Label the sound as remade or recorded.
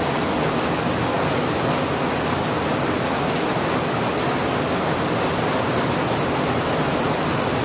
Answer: recorded